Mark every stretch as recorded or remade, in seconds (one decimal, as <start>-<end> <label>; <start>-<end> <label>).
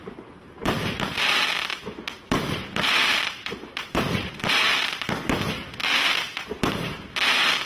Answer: 0.0-0.6 recorded; 0.6-1.2 remade; 1.2-3.0 recorded; 3.0-4.4 remade; 4.4-7.7 recorded